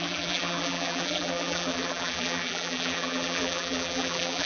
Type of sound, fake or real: fake